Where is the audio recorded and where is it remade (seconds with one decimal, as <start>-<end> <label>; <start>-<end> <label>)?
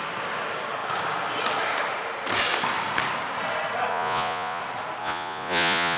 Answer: 0.0-3.9 recorded; 3.9-4.6 remade; 4.6-5.0 recorded; 5.0-6.0 remade